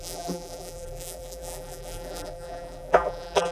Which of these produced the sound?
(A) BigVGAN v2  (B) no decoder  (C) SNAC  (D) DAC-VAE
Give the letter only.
A